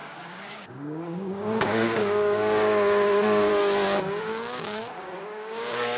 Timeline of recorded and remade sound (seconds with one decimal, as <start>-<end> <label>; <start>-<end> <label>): 0.0-3.5 remade; 3.5-4.2 recorded; 4.2-6.0 remade